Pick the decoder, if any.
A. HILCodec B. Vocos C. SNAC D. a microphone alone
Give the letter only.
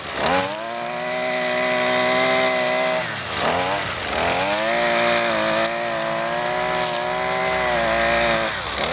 D